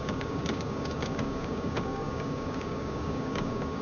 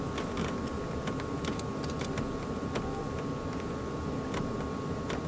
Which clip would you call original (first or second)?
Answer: second